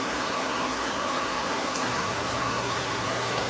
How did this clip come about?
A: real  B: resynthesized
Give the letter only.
B